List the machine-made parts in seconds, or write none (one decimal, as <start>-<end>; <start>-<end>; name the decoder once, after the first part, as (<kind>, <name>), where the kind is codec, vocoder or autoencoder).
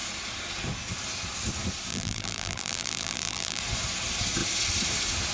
1.9-3.6 (vocoder, BigVGAN v2)